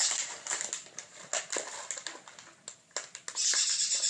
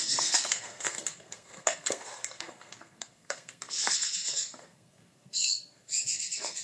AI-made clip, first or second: second